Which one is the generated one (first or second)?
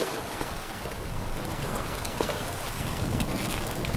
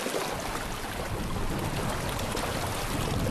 first